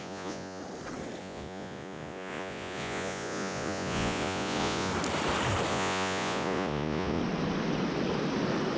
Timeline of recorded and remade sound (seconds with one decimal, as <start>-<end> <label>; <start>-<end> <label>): 0.0-0.6 remade; 0.6-1.2 recorded; 1.2-4.9 remade; 4.9-5.7 recorded; 5.7-7.2 remade; 7.2-8.8 recorded